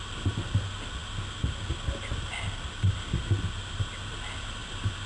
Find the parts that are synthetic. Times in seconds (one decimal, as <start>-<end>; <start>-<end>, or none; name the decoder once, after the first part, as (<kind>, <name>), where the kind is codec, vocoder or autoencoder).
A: none